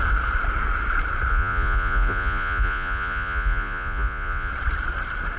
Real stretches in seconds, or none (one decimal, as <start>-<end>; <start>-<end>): 0.0-1.3; 4.5-5.4